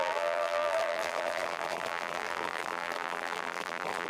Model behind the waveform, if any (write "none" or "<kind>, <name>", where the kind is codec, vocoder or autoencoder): vocoder, BigVGAN v2